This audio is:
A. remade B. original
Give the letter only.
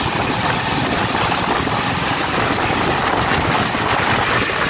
B